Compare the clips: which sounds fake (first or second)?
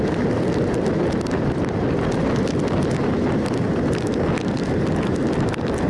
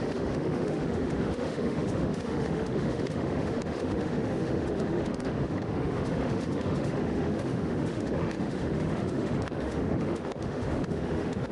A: second